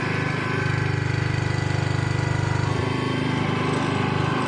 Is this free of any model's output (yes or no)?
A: yes